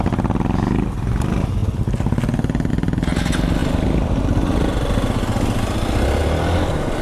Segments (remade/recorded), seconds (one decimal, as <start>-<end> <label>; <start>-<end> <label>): 0.0-7.0 recorded